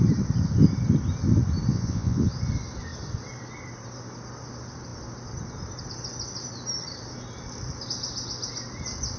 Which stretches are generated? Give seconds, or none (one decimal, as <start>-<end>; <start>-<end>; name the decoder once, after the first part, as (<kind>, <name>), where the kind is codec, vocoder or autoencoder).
1.7-2.3 (vocoder, Vocos)